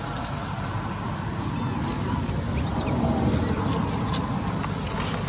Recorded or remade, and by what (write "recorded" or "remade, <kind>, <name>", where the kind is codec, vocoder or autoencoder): recorded